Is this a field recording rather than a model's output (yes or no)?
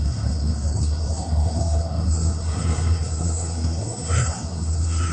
no